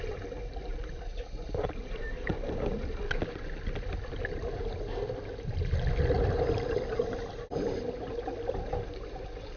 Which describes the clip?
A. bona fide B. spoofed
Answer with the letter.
A